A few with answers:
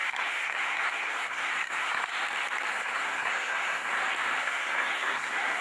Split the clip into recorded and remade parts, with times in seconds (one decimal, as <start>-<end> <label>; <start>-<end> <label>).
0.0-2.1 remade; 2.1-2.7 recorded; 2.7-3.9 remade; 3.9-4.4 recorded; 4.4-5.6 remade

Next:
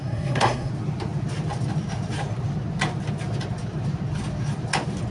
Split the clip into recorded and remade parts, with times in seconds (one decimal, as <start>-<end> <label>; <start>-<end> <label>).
0.0-0.7 remade; 0.7-5.1 recorded

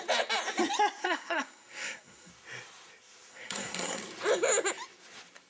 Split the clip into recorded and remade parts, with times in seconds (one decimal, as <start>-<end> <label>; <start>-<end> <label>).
0.0-1.0 recorded; 1.0-2.3 remade; 2.3-3.3 recorded; 3.3-4.0 remade; 4.0-5.5 recorded

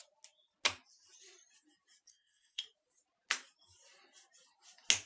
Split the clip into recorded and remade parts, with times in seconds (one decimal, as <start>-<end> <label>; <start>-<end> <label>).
0.0-2.1 recorded; 2.1-2.6 remade; 2.6-5.1 recorded

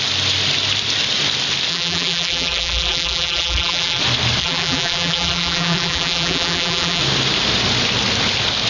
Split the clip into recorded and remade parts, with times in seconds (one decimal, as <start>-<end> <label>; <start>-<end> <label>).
0.0-1.7 recorded; 1.7-4.0 remade; 4.0-4.4 recorded; 4.4-7.0 remade; 7.0-8.7 recorded

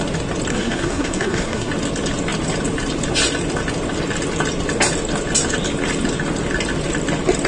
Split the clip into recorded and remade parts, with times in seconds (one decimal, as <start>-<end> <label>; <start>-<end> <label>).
0.0-0.5 recorded; 0.5-1.7 remade; 1.7-7.5 recorded